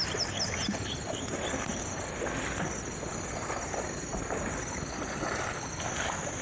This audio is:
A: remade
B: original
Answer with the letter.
B